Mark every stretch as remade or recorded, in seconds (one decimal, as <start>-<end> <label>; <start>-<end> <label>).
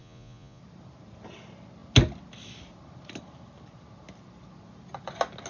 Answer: 0.0-0.6 remade; 0.6-5.5 recorded